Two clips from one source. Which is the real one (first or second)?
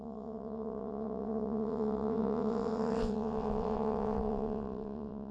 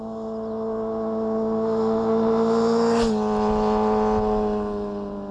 second